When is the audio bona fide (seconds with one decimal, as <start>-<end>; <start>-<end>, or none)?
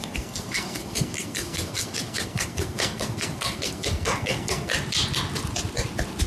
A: 4.7-6.3